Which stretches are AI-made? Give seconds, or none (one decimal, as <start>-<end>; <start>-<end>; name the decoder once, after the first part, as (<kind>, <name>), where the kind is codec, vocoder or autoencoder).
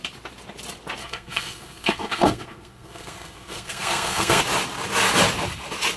1.0-4.4 (codec, SNAC)